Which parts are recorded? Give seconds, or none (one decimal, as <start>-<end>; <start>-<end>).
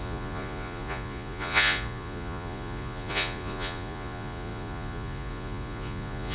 none